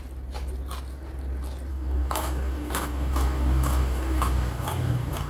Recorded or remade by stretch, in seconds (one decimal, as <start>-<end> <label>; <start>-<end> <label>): 0.0-1.7 recorded; 1.7-5.3 remade